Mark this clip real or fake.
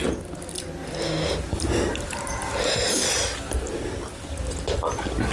real